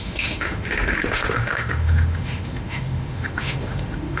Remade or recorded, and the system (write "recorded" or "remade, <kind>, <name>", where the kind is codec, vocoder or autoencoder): remade, autoencoder, DAC-VAE